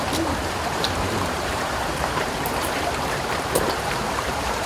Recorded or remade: remade